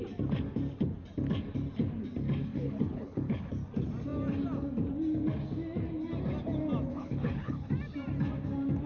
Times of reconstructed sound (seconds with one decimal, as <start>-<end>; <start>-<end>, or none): 2.5-3.5; 6.9-7.7